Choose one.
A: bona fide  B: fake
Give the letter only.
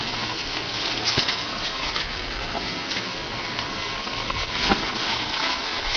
B